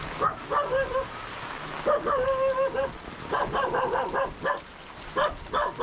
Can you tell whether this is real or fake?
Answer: real